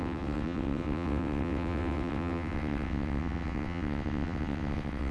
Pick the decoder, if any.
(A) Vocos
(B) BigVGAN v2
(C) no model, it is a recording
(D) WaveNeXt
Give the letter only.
D